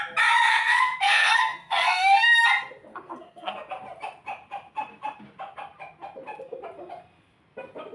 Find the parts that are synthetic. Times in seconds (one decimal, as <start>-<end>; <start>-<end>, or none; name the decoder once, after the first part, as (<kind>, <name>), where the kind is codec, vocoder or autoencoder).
0.5-2.3 (codec, SNAC); 2.9-3.5